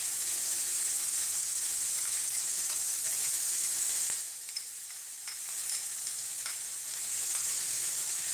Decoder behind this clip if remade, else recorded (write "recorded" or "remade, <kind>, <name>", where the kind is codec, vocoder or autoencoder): remade, autoencoder, DAC-VAE